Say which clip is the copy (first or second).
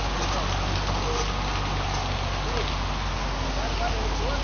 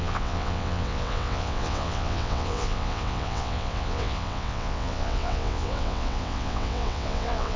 second